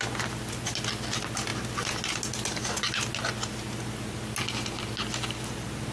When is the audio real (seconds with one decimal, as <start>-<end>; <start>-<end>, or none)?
0.0-5.9

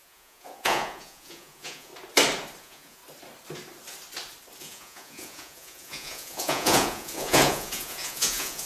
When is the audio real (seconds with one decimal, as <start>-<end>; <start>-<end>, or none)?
1.9-2.6; 3.0-4.6

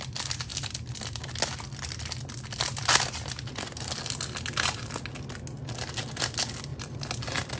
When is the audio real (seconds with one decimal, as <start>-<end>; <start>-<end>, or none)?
0.0-6.7

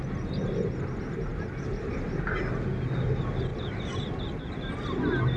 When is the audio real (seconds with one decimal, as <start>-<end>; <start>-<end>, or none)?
0.0-5.4